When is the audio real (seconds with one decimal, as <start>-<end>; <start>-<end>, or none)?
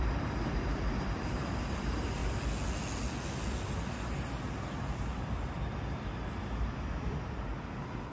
2.2-5.9